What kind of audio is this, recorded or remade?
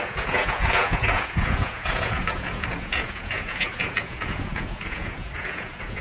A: remade